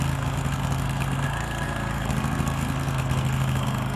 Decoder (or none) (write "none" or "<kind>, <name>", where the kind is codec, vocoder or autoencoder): codec, SNAC